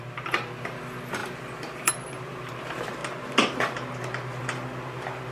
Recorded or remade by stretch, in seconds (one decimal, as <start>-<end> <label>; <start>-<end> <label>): 0.0-3.0 remade; 3.0-4.4 recorded; 4.4-5.3 remade

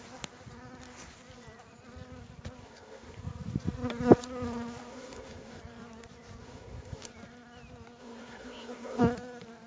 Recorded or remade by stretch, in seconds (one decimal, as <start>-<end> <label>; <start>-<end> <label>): 0.0-2.6 recorded; 2.6-3.2 remade; 3.2-4.9 recorded; 4.9-5.6 remade; 5.6-6.4 recorded; 6.4-7.1 remade; 7.1-8.0 recorded; 8.0-9.0 remade; 9.0-9.7 recorded

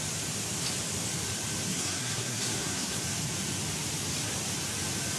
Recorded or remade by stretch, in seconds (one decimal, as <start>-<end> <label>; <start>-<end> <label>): 0.0-1.7 recorded; 1.7-3.0 remade; 3.0-5.2 recorded

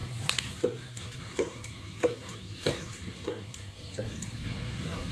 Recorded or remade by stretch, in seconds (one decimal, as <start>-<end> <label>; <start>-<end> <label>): 0.0-5.1 remade